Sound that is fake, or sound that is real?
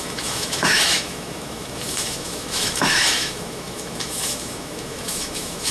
fake